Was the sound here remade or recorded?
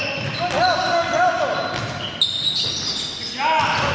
recorded